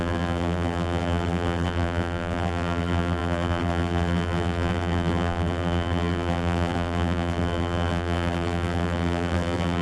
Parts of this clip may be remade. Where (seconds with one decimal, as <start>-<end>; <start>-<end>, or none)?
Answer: 0.0-9.8